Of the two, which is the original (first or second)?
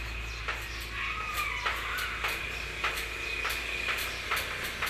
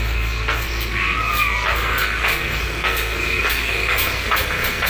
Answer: first